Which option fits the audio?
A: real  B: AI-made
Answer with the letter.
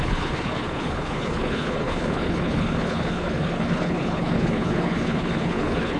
B